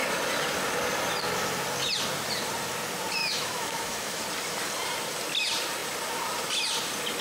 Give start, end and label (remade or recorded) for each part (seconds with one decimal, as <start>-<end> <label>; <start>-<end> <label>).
0.0-3.2 recorded; 3.2-4.2 remade; 4.2-7.2 recorded